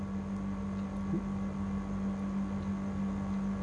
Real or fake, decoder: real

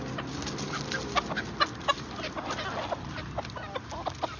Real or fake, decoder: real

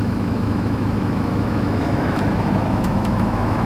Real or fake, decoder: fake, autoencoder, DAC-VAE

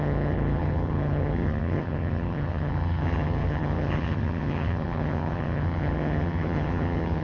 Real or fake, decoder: fake, vocoder, HiFi-GAN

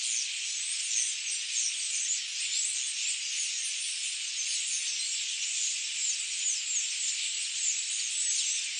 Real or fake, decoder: real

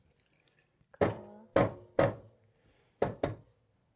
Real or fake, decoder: real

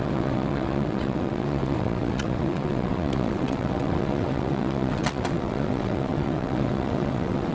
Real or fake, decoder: fake, vocoder, WaveNeXt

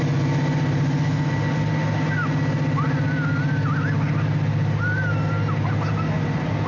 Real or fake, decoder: real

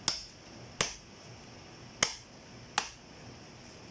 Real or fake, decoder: real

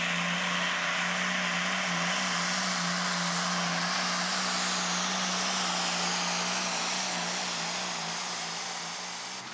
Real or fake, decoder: real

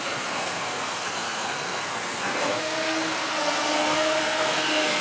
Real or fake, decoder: fake, codec, SNAC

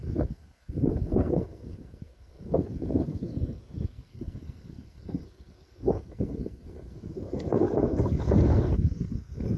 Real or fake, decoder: fake, codec, SNAC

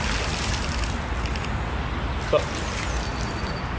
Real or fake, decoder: real